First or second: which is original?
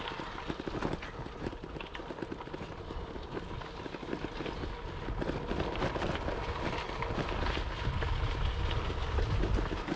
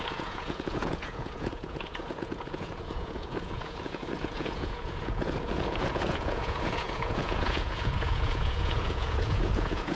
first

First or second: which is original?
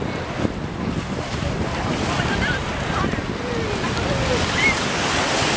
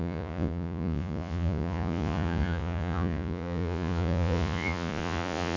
first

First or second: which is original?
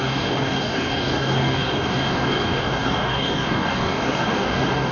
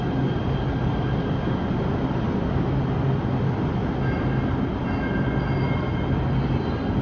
second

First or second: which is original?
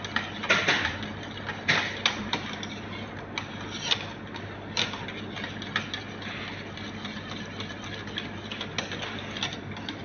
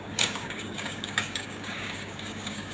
first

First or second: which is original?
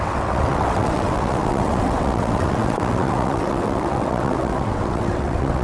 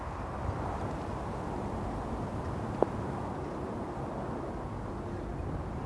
second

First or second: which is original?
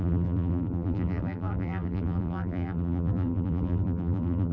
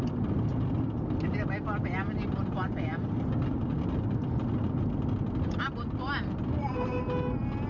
second